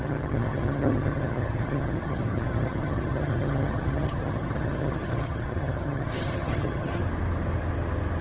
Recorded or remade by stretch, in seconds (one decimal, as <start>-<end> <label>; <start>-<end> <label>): 0.0-7.0 remade; 7.0-8.2 recorded